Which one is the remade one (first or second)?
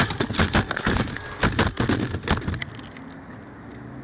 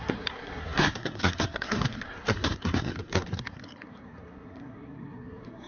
second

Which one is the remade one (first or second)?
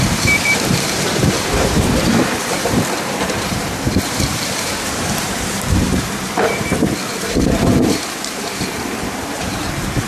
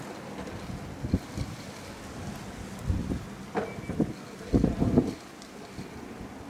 first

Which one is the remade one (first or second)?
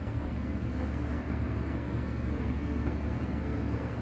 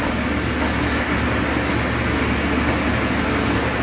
first